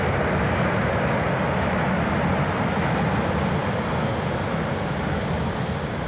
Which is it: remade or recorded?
recorded